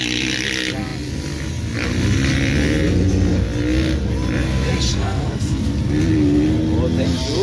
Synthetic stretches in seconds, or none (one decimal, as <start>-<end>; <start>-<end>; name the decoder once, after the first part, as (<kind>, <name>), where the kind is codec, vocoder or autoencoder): 4.9-5.6 (codec, SNAC)